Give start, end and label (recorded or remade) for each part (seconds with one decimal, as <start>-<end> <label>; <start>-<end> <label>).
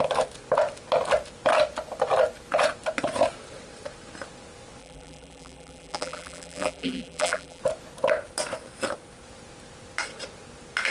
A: 0.0-4.8 recorded; 4.8-7.6 remade; 7.6-10.9 recorded